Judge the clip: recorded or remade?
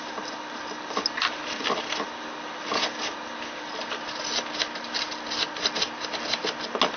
recorded